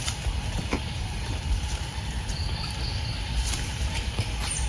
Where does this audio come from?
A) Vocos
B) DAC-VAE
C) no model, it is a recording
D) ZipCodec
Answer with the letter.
C